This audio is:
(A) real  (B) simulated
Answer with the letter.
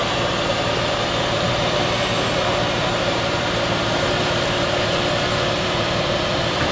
B